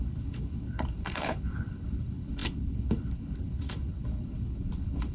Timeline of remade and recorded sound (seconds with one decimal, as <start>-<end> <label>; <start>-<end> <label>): 0.0-5.1 remade